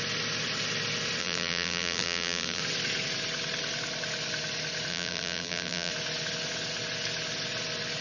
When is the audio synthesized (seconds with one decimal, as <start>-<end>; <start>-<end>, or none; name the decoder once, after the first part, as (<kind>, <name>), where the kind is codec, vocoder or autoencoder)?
1.2-2.6 (vocoder, BigVGAN v2); 4.9-5.9